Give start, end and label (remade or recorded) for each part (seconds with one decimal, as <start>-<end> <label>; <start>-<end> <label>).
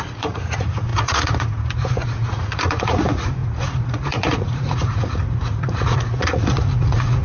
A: 0.0-7.2 remade